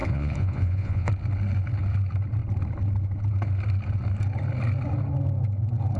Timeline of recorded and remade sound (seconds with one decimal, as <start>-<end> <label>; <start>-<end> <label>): 0.0-1.1 remade; 1.1-6.0 recorded